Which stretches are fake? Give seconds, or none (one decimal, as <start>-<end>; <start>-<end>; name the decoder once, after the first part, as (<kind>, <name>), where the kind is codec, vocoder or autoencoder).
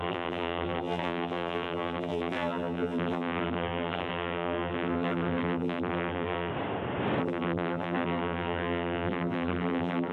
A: 0.0-6.5 (vocoder, BigVGAN v2); 7.2-10.1